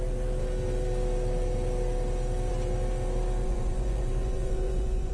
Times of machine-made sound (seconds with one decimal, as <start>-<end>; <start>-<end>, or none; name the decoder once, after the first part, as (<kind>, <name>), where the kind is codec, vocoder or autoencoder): 3.4-5.1 (vocoder, Vocos)